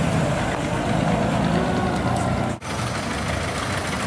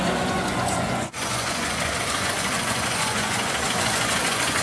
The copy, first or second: second